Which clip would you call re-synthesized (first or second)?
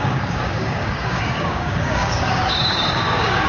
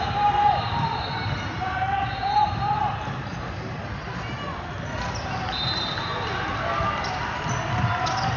first